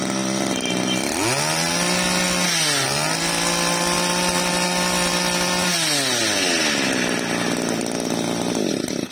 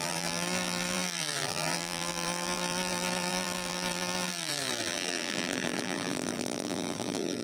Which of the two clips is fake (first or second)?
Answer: second